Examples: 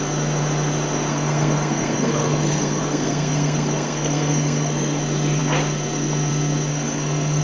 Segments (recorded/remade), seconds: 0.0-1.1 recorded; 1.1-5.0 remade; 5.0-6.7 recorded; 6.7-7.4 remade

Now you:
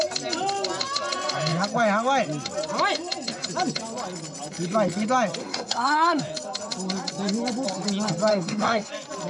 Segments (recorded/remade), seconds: 0.0-5.4 recorded; 5.4-6.2 remade; 6.2-8.3 recorded; 8.3-8.9 remade; 8.9-9.3 recorded

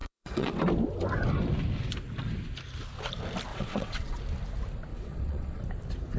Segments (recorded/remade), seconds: 0.0-0.5 remade; 0.5-3.5 recorded; 3.5-4.2 remade; 4.2-4.9 recorded; 4.9-5.6 remade; 5.6-6.2 recorded

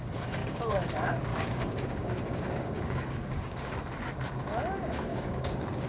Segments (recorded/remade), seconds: 0.0-0.4 recorded; 0.4-0.9 remade; 0.9-1.3 recorded; 1.3-3.8 remade; 3.8-5.1 recorded; 5.1-5.9 remade

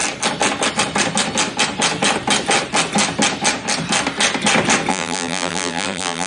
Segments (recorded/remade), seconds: 0.0-4.9 recorded; 4.9-6.3 remade

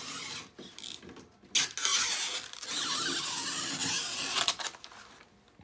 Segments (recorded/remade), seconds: 0.0-5.6 recorded

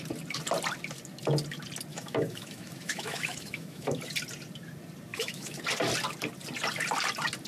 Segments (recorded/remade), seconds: 0.0-1.9 recorded; 1.9-4.0 remade; 4.0-5.1 recorded; 5.1-5.6 remade; 5.6-7.5 recorded

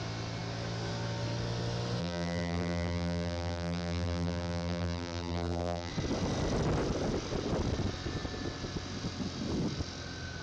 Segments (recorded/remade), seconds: 0.0-2.0 recorded; 2.0-5.9 remade; 5.9-10.4 recorded